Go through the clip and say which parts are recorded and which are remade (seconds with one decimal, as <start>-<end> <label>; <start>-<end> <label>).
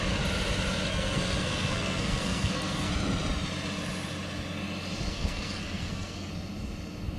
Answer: 0.0-0.9 recorded; 0.9-2.9 remade; 2.9-5.1 recorded; 5.1-6.3 remade; 6.3-7.2 recorded